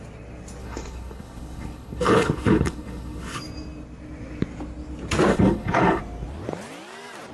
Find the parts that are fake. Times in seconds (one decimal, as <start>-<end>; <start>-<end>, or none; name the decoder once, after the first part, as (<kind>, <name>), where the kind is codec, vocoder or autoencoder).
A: 0.6-3.4 (codec, HILCodec); 5.3-6.0